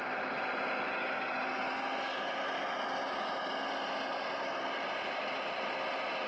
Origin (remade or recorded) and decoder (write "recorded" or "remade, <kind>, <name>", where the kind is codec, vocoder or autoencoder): recorded